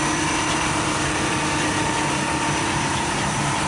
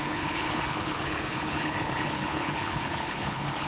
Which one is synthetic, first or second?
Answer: second